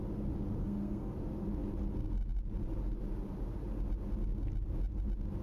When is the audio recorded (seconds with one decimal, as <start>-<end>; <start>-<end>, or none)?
0.0-0.6; 1.1-5.4